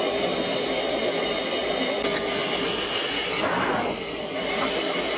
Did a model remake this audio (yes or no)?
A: no